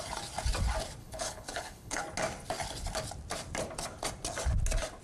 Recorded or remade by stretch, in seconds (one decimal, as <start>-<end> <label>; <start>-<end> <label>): 0.0-1.0 recorded; 1.0-2.0 remade; 2.0-5.0 recorded